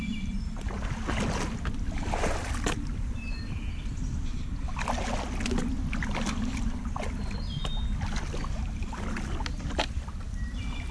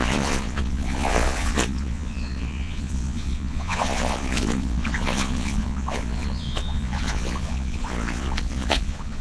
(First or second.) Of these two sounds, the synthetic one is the second